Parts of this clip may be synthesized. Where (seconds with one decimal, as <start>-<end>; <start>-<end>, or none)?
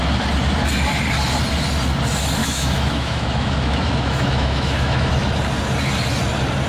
2.4-5.1